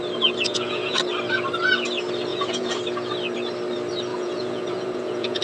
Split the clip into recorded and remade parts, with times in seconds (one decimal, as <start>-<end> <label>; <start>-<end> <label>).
0.0-0.5 recorded; 0.5-1.0 remade; 1.0-2.3 recorded; 2.3-2.8 remade; 2.8-4.1 recorded; 4.1-5.4 remade